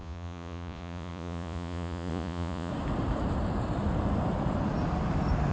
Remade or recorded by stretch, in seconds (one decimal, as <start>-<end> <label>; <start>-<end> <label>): 0.0-2.7 remade; 2.7-5.5 recorded